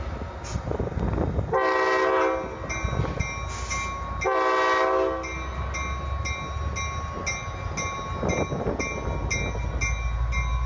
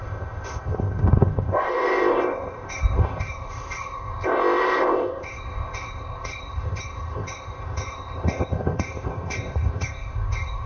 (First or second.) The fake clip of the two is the second